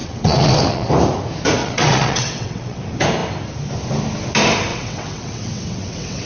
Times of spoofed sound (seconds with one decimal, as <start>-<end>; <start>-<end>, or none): 0.0-0.9; 1.6-2.8; 4.7-6.3